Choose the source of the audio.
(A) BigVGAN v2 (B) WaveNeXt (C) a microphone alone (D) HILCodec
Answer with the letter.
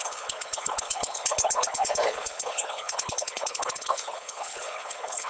D